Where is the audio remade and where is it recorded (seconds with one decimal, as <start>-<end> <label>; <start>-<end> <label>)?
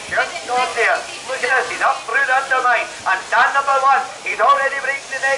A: 0.0-2.1 recorded; 2.1-3.0 remade; 3.0-5.4 recorded